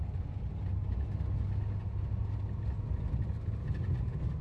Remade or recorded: recorded